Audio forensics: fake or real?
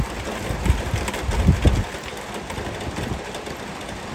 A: real